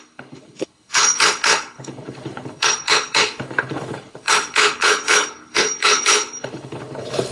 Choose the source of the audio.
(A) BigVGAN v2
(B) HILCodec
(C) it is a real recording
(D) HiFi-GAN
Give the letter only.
B